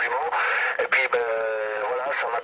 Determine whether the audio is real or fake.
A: real